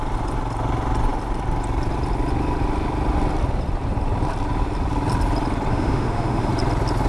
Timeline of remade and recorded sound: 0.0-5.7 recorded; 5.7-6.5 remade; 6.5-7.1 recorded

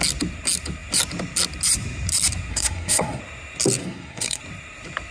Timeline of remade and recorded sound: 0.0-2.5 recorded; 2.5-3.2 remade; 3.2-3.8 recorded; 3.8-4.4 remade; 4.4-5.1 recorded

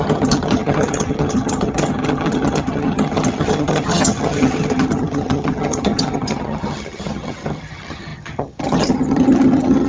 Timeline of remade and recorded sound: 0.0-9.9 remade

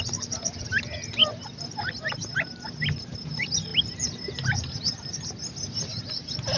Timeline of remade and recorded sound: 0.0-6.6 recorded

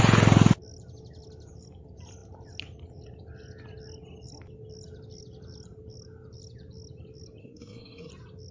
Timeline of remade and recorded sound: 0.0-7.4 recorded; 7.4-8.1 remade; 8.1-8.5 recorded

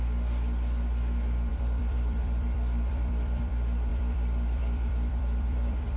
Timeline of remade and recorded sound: 0.0-1.5 recorded; 1.5-3.5 remade; 3.5-3.9 recorded; 3.9-6.0 remade

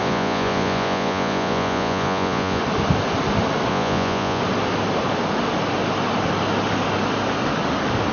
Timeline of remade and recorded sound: 0.0-2.6 remade; 2.6-3.7 recorded; 3.7-4.4 remade; 4.4-8.1 recorded